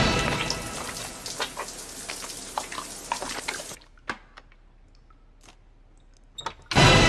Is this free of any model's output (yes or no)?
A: yes